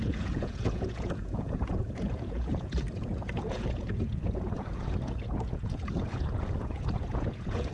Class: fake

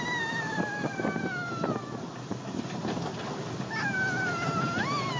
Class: real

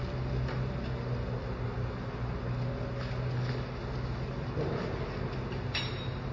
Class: real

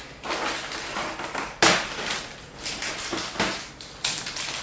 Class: real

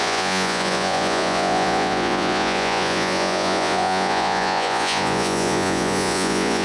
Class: fake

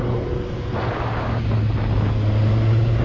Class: real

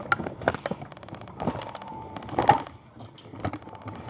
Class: real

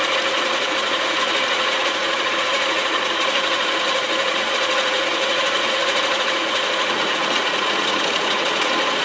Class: fake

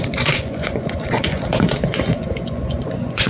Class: fake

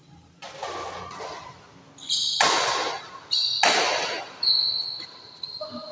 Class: real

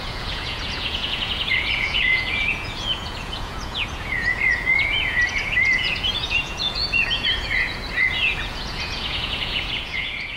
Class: fake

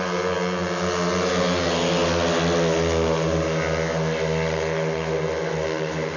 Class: real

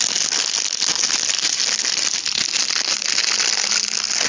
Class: real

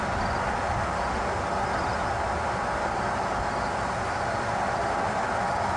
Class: real